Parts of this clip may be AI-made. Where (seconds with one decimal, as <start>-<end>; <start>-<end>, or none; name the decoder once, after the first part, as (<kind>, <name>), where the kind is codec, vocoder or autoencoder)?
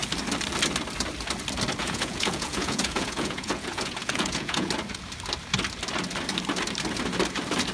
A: 1.8-4.7 (vocoder, Vocos)